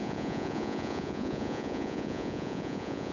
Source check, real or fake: fake